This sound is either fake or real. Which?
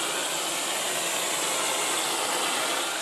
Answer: real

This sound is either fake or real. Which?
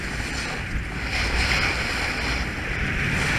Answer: real